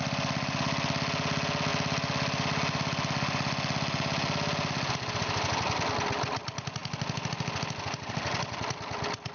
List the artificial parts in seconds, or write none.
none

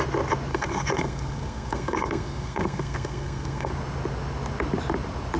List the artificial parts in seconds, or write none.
0.5-3.7 (codec, SNAC)